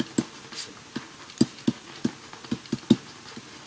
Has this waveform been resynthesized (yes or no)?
no